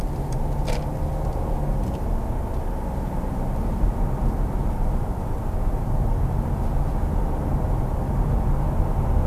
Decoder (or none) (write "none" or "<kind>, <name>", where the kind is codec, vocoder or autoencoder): none